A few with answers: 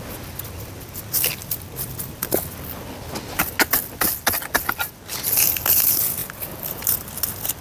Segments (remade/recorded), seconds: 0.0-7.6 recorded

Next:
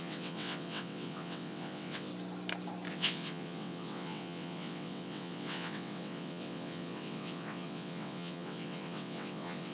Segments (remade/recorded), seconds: 0.0-2.1 remade; 2.1-2.9 recorded; 2.9-9.7 remade

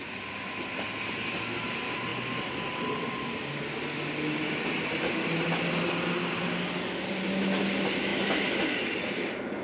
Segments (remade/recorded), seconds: 0.0-9.6 recorded

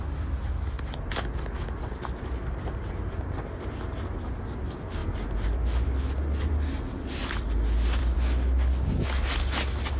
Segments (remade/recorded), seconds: 0.0-10.0 recorded